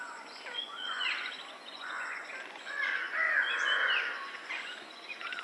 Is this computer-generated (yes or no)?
yes